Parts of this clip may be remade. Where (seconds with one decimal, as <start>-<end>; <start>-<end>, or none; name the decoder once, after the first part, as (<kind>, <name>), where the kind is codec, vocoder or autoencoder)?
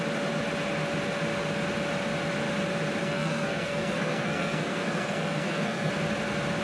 3.0-5.9 (codec, SNAC)